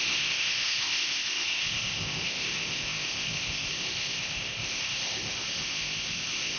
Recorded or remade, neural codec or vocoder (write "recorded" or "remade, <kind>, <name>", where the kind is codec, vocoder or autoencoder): remade, codec, ZipCodec